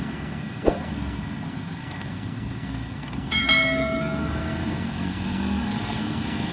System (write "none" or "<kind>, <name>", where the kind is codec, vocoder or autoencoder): codec, SNAC